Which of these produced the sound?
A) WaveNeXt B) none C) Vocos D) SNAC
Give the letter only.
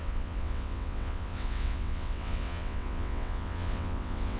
A